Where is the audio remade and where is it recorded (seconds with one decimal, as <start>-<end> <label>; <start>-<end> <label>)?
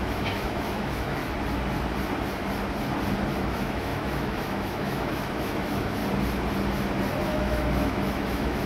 0.0-1.2 remade; 1.2-3.4 recorded; 3.4-6.0 remade; 6.0-7.2 recorded; 7.2-8.7 remade